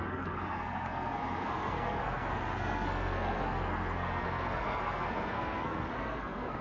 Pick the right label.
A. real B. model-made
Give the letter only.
B